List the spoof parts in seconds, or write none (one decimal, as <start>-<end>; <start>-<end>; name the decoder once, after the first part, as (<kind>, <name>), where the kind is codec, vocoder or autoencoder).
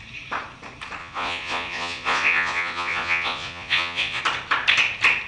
1.0-4.2 (vocoder, Vocos)